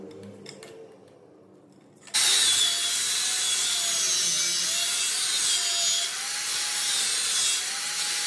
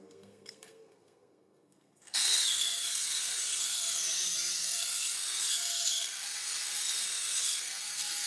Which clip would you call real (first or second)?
first